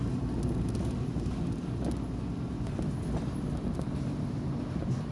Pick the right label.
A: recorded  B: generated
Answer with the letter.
A